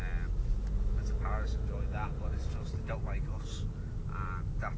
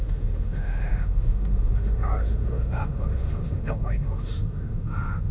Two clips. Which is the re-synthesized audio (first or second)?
second